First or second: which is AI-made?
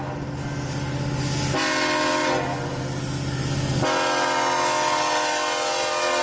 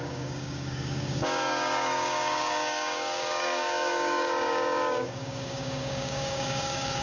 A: second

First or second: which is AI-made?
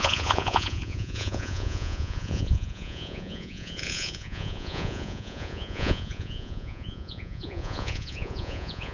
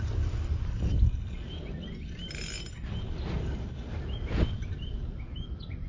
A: first